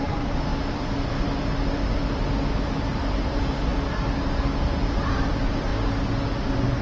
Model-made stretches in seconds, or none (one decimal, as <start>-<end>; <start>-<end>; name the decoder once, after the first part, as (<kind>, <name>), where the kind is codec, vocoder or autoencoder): 0.0-0.5 (vocoder, BigVGAN v2); 2.6-3.7; 4.9-5.7